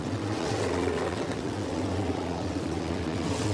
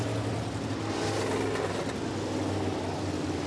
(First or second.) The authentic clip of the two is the second